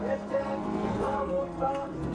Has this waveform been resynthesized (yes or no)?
yes